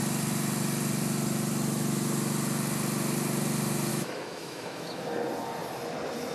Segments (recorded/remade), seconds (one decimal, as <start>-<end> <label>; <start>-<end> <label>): 0.0-3.9 recorded; 3.9-5.0 remade; 5.0-6.3 recorded